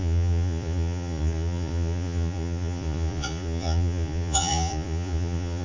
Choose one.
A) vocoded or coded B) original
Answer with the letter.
A